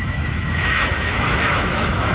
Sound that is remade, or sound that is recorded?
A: remade